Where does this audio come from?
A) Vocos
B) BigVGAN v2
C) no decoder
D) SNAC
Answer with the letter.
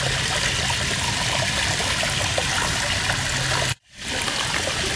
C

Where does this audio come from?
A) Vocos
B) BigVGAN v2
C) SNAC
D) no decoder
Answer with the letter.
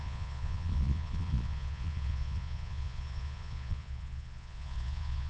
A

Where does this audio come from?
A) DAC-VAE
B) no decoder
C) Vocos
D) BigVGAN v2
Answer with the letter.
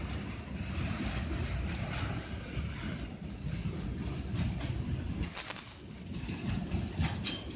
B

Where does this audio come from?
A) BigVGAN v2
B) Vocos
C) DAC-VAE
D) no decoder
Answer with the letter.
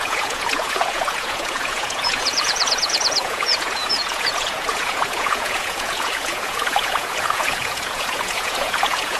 B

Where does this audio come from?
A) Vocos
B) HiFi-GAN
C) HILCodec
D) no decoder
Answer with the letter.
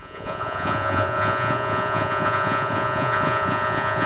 A